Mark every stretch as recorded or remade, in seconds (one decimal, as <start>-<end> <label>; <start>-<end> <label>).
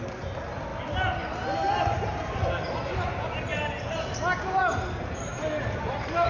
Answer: 0.0-0.7 recorded; 0.7-2.4 remade; 2.4-5.3 recorded; 5.3-6.3 remade